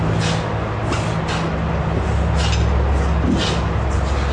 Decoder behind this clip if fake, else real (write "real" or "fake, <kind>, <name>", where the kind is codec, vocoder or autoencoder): real